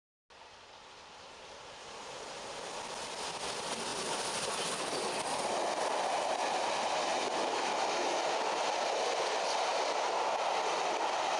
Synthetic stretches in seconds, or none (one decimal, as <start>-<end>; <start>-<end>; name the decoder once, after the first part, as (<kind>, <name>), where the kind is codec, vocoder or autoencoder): none